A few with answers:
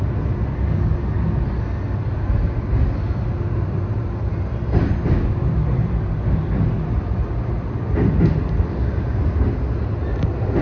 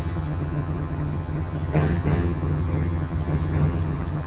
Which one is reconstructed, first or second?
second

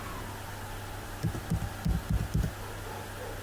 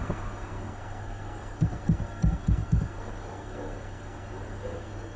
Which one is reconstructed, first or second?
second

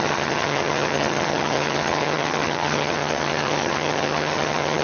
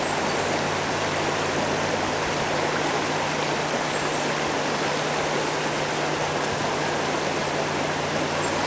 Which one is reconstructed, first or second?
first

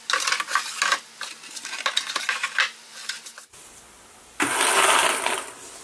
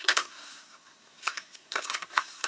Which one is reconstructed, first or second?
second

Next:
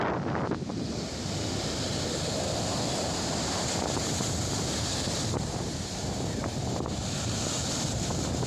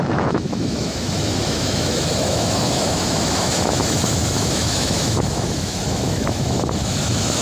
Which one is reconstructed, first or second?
second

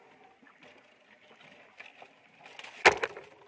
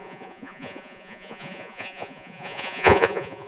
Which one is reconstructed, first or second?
second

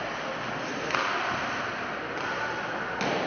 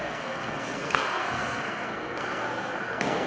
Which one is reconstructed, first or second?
second